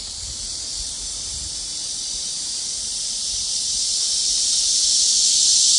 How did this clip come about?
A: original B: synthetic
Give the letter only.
B